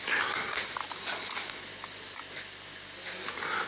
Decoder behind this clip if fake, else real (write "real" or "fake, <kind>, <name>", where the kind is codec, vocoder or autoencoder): real